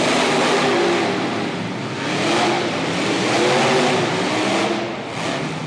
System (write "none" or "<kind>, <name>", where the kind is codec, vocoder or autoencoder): none